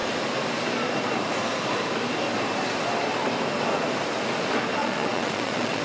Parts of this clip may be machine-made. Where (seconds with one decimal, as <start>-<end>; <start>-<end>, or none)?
4.8-5.8